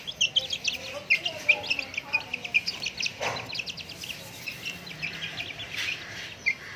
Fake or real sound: real